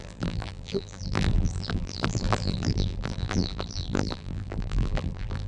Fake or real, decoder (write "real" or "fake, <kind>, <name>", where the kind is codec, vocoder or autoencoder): fake, vocoder, BigVGAN v2